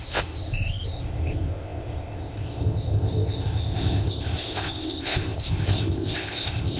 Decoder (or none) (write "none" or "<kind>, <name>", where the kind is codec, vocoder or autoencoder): codec, ZipCodec